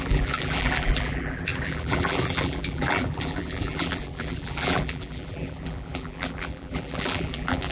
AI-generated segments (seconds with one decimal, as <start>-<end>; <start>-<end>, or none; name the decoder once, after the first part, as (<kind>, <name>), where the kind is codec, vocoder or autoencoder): 0.0-7.7 (vocoder, BigVGAN v2)